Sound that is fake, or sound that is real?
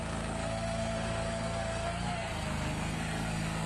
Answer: fake